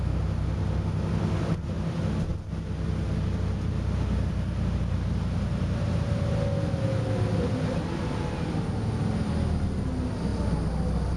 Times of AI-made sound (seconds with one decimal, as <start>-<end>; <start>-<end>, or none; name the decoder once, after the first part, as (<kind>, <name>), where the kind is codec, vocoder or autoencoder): none